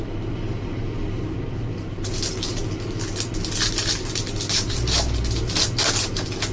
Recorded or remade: recorded